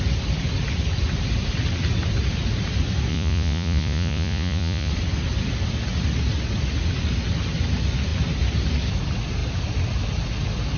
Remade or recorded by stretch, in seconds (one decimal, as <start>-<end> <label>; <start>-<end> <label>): 0.0-3.1 recorded; 3.1-4.9 remade; 4.9-10.8 recorded